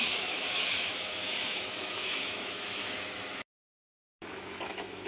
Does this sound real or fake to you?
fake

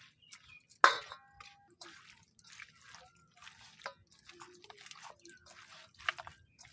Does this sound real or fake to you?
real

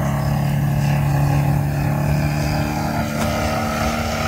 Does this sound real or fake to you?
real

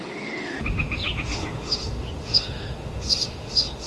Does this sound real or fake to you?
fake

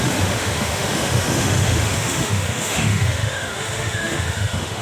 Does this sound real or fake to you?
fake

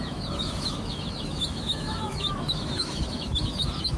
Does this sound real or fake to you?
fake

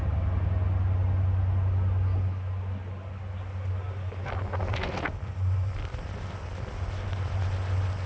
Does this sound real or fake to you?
real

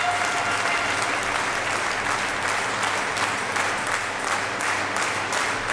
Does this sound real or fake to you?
real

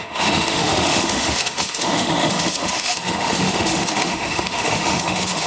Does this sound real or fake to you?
fake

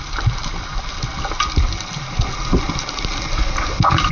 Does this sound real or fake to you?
real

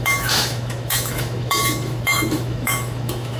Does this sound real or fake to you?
fake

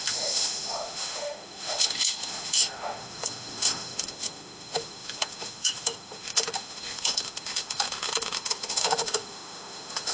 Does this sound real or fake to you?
fake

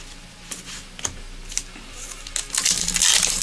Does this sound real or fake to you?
real